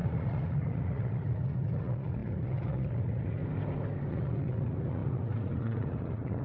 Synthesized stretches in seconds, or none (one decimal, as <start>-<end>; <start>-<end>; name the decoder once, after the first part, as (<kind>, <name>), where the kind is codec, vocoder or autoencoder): 0.0-3.4 (vocoder, Vocos); 4.1-6.4

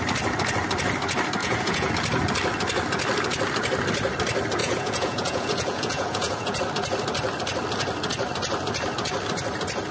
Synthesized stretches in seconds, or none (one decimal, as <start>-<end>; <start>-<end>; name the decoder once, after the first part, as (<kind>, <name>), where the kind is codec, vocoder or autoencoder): 1.4-1.9 (vocoder, Vocos); 4.6-6.6

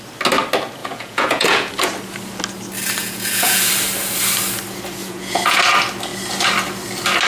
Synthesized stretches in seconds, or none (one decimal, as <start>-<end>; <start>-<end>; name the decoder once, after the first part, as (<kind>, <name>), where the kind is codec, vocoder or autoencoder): 0.8-1.7 (vocoder, Vocos); 3.0-3.7; 5.0-5.6